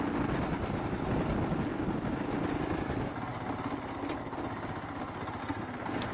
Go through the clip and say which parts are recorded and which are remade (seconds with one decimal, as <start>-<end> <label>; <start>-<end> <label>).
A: 0.0-5.4 recorded; 5.4-6.1 remade